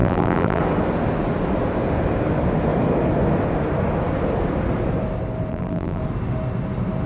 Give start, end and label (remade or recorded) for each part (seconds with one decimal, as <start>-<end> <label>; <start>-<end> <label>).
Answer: 0.0-0.6 remade; 0.6-5.5 recorded; 5.5-6.0 remade; 6.0-7.1 recorded